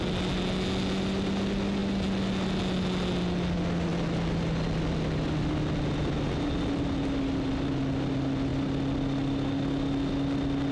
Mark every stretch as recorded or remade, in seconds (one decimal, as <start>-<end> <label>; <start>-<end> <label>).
0.0-10.7 recorded